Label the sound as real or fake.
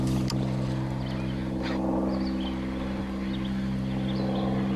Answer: real